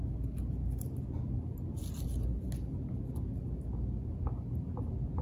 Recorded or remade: recorded